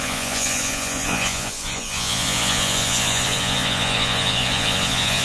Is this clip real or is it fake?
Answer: fake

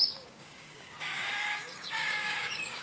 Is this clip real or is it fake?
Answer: fake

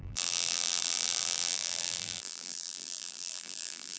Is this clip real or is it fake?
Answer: fake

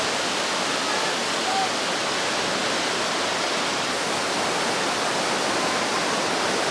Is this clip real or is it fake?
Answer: real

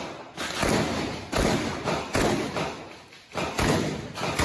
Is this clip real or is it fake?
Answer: real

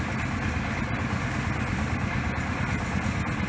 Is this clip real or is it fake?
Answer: real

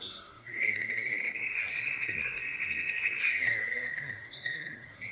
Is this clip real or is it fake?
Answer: fake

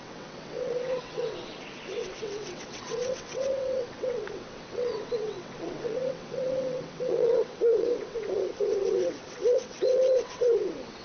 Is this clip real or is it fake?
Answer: fake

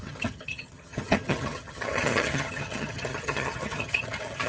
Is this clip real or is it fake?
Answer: fake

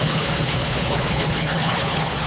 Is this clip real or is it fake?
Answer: fake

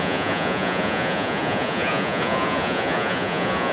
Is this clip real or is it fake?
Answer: fake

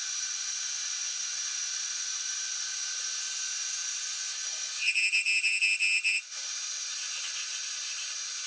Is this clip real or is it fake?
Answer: real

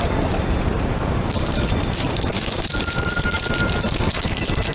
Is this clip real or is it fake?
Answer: fake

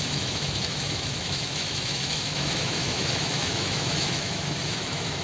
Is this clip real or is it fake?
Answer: fake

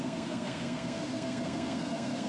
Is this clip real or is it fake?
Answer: fake